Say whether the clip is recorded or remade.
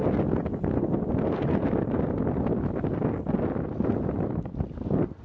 recorded